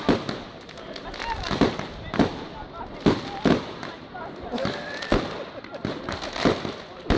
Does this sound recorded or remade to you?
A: recorded